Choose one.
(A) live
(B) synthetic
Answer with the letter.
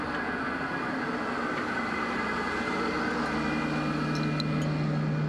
A